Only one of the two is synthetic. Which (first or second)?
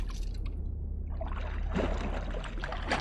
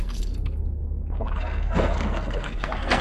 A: second